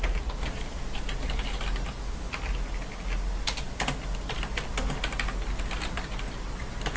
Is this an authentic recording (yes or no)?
yes